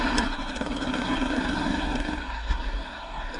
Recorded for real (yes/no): no